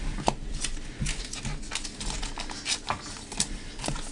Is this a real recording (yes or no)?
yes